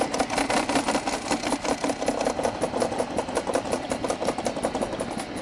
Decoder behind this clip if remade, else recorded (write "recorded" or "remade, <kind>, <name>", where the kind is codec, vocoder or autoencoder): recorded